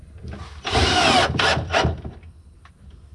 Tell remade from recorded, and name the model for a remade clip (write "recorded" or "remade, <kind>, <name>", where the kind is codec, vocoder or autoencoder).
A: recorded